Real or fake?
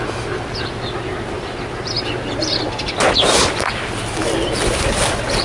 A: real